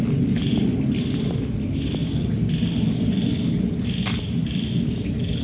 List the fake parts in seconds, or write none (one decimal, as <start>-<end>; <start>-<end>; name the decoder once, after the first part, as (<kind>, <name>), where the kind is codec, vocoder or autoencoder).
none